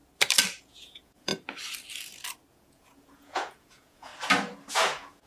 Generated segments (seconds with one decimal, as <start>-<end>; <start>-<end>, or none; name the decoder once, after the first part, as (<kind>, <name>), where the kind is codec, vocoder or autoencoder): 0.6-1.3 (vocoder, Vocos); 2.5-4.1; 4.7-5.3

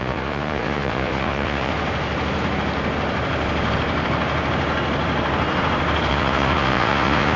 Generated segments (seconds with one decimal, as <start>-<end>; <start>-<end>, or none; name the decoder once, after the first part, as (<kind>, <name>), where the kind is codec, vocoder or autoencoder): 0.0-1.7 (vocoder, Vocos); 6.1-7.4

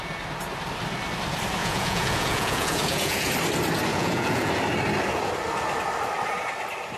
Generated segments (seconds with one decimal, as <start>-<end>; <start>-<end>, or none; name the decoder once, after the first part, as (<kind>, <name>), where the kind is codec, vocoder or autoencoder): 1.6-3.3 (vocoder, Vocos); 3.9-4.5

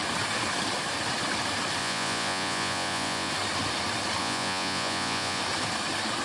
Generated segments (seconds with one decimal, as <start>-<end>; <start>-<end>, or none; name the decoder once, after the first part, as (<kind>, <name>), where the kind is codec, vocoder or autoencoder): 1.8-3.3 (vocoder, Vocos); 4.2-5.4